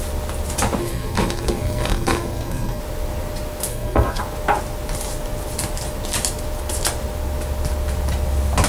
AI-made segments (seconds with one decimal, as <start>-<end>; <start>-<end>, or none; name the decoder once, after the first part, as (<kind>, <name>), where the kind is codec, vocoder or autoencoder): 0.8-2.8 (codec, SNAC); 3.7-4.2